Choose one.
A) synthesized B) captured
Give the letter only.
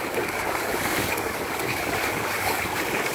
A